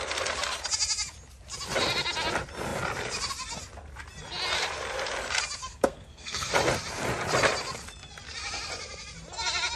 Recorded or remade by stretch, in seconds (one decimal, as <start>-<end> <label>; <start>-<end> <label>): 0.0-5.6 recorded; 5.6-6.5 remade; 6.5-9.8 recorded

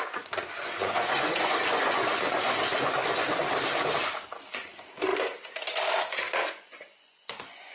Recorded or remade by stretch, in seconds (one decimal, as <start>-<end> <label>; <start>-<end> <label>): 0.0-3.4 remade; 3.4-4.5 recorded; 4.5-5.1 remade; 5.1-6.0 recorded; 6.0-7.7 remade